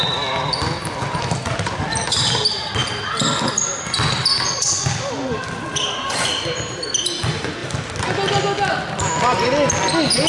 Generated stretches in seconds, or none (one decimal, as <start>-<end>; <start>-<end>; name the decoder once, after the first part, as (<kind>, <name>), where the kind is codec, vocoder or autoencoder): none